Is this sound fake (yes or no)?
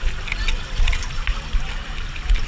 no